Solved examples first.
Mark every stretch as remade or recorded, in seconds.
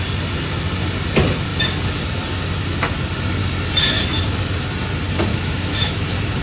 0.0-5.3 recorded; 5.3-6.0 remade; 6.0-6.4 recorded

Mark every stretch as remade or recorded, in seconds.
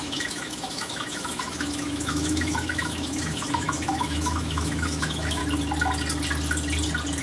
0.0-5.4 remade; 5.4-7.2 recorded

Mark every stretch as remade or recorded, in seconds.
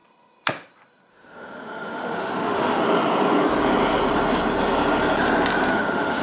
0.0-1.1 recorded; 1.1-2.8 remade; 2.8-5.7 recorded; 5.7-6.2 remade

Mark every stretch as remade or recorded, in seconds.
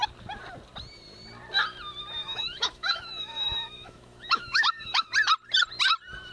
0.0-2.2 recorded; 2.2-5.1 remade; 5.1-6.3 recorded